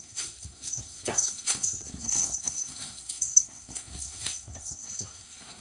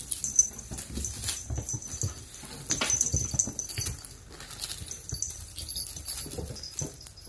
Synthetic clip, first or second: first